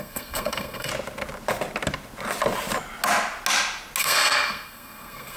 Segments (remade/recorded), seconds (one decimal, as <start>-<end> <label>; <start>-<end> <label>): 0.0-0.9 remade; 0.9-4.0 recorded; 4.0-5.4 remade